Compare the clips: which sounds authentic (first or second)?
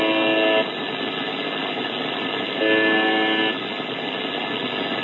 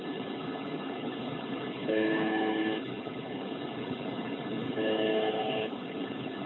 first